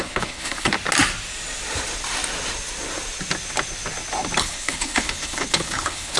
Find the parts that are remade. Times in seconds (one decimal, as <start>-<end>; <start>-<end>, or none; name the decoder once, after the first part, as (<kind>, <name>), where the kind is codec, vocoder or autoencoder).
0.0-0.7 (codec, HILCodec); 4.4-6.2